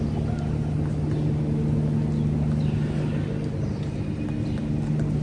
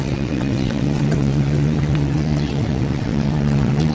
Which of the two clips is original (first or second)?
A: first